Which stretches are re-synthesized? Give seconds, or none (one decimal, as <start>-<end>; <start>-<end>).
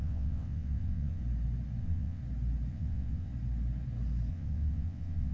0.0-1.2; 1.8-2.2; 2.7-3.3; 4.3-5.3